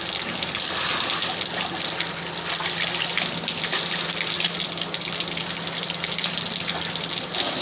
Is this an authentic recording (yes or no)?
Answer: yes